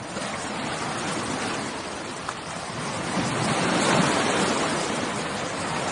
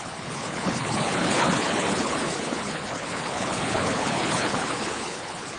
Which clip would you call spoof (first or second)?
second